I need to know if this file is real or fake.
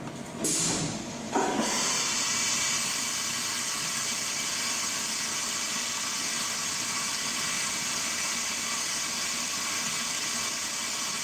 real